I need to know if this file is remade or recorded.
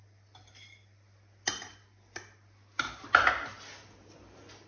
recorded